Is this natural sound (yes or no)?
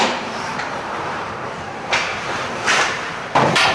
no